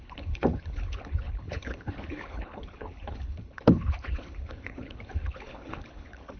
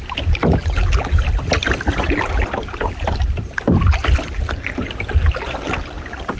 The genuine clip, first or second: second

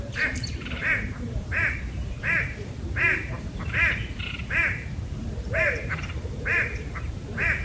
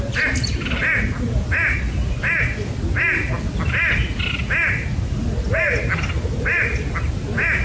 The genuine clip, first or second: second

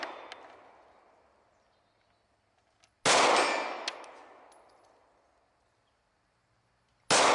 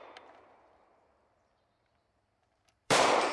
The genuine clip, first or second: first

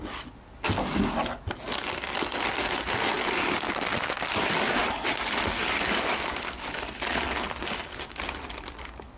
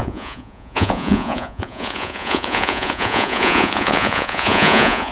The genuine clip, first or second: first